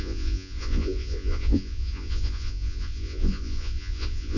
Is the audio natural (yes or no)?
no